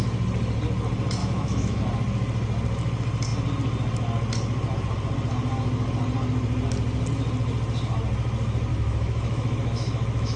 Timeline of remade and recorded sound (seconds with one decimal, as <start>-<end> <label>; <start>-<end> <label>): 0.0-1.2 recorded; 1.2-1.8 remade; 1.8-8.7 recorded; 8.7-10.4 remade